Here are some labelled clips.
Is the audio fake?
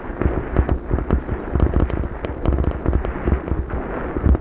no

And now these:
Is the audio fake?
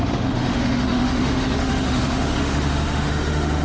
yes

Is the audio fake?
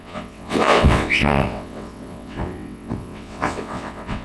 yes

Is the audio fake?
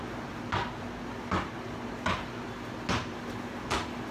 no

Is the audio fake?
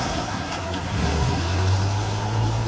yes